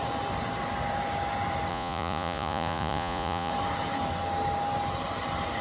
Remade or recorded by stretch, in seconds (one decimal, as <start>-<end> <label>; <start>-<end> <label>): 0.0-1.7 recorded; 1.7-3.5 remade; 3.5-5.6 recorded